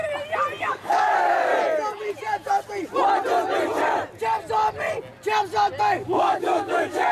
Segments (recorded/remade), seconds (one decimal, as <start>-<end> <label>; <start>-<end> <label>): 0.0-0.6 recorded; 0.6-1.5 remade; 1.5-5.8 recorded; 5.8-7.1 remade